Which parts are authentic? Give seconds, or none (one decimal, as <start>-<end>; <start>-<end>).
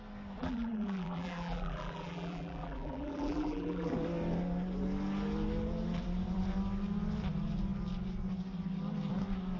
0.0-0.4; 3.9-9.6